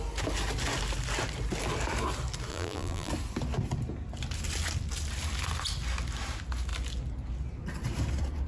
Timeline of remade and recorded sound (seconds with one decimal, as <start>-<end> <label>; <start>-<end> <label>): 0.0-2.5 recorded; 2.5-3.1 remade; 3.1-8.5 recorded